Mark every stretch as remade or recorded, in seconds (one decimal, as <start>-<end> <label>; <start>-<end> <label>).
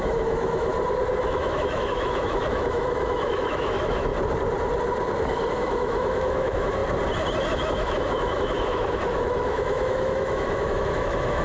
0.0-0.7 remade; 0.7-1.2 recorded; 1.2-4.1 remade; 4.1-5.5 recorded; 5.5-6.8 remade; 6.8-7.4 recorded; 7.4-11.4 remade